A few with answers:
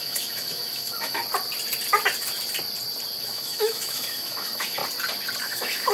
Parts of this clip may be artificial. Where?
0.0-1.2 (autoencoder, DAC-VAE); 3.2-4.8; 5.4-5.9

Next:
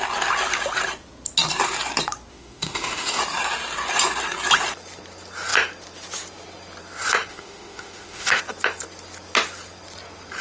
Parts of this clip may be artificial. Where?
2.3-3.2 (autoencoder, DAC-VAE); 7.3-8.4

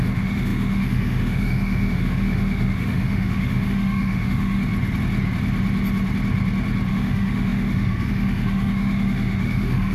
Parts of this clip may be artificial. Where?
0.0-4.7 (autoencoder, DAC-VAE); 6.9-9.9

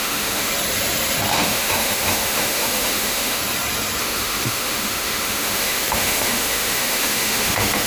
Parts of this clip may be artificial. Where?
0.0-0.5 (autoencoder, DAC-VAE); 1.3-3.4; 4.0-7.9

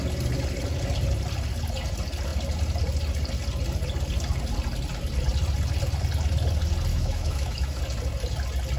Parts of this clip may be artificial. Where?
6.9-7.8 (autoencoder, DAC-VAE)

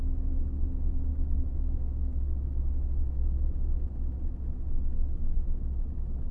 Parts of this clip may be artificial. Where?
1.1-2.7 (autoencoder, DAC-VAE)

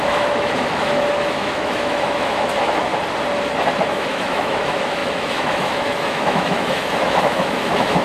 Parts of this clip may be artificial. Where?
0.0-2.9 (autoencoder, DAC-VAE); 3.7-8.0

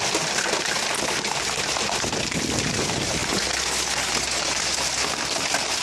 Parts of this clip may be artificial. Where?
none